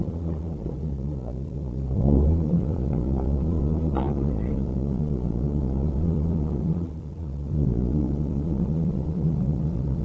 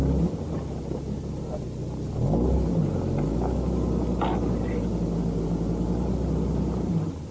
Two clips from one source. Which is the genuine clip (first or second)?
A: second